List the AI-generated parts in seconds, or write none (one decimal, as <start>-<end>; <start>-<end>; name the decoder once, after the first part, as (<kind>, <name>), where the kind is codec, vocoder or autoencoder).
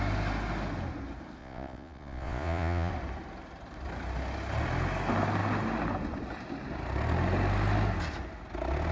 1.4-2.9 (vocoder, Vocos)